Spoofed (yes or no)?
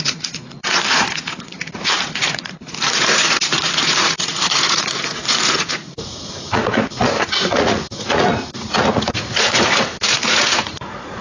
yes